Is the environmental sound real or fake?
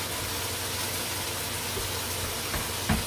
real